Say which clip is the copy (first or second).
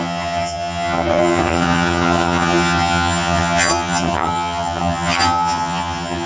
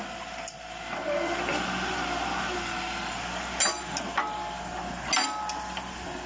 first